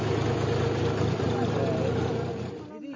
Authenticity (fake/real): real